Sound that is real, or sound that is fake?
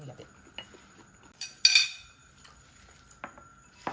real